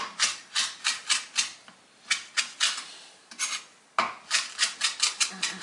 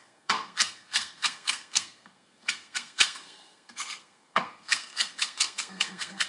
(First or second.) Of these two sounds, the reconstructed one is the second